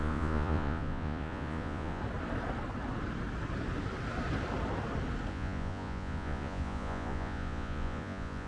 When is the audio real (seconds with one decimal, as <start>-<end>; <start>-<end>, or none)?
2.0-5.3

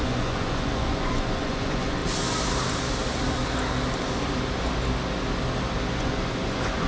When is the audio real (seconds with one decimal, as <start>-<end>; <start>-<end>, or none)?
2.0-6.0

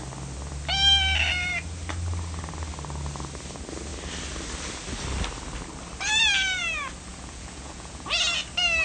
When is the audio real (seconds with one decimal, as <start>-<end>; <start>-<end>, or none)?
0.0-7.1; 8.2-8.8

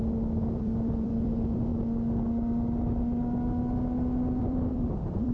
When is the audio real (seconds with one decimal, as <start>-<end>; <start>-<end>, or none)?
1.7-4.4

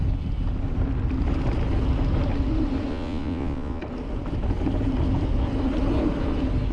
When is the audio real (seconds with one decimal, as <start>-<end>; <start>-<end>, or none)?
0.0-2.9; 3.8-6.7

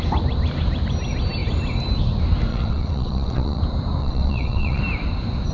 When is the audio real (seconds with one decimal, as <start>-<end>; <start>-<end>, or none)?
0.0-2.5; 3.6-4.0; 4.8-5.5